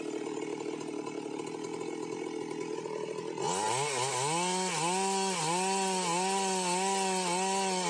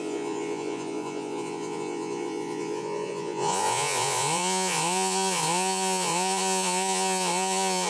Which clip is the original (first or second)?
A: first